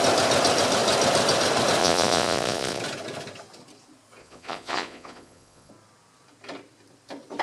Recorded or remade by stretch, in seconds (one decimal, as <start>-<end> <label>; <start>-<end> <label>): 0.0-1.8 recorded; 1.8-2.8 remade; 2.8-4.2 recorded; 4.2-5.7 remade; 5.7-7.4 recorded